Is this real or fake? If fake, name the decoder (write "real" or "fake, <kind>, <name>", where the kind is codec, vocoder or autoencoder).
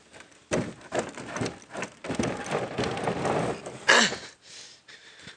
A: real